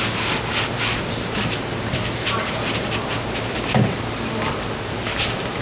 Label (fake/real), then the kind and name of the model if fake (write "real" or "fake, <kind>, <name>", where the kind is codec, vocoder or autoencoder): real